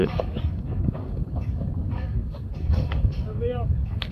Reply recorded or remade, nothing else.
remade